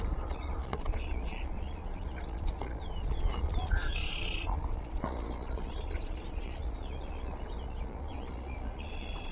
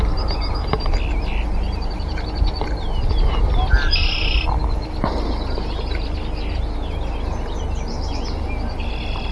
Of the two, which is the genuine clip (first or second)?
second